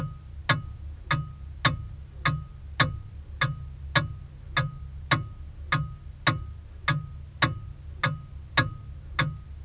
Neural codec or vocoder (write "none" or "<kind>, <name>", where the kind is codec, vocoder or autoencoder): none